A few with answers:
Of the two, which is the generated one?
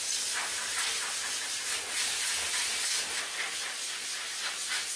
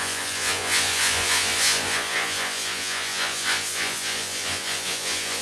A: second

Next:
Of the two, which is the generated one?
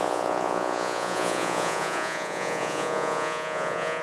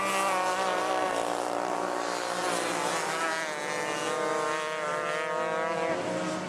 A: first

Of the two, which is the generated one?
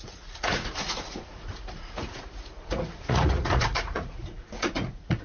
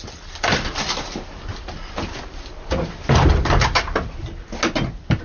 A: first